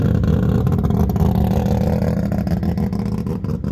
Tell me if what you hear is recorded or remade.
recorded